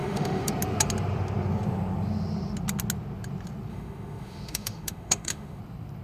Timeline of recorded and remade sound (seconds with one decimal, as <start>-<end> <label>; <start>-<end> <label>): 0.0-0.5 remade; 0.5-3.7 recorded; 3.7-5.6 remade; 5.6-6.0 recorded